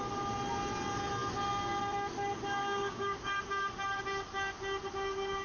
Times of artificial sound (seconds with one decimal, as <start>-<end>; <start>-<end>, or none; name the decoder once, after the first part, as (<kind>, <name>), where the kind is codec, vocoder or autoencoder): 2.6-3.4 (codec, DAC)